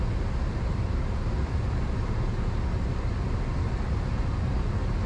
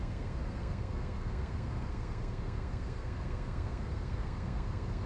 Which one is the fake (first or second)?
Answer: second